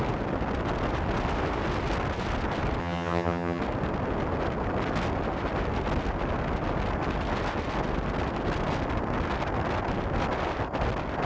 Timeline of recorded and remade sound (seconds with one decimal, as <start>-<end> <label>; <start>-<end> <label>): 0.0-2.8 recorded; 2.8-3.6 remade; 3.6-11.2 recorded